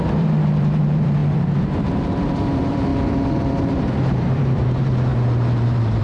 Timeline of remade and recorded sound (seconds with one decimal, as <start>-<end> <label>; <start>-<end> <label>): 0.0-1.2 remade; 1.2-1.7 recorded; 1.7-2.9 remade; 2.9-3.6 recorded; 3.6-6.0 remade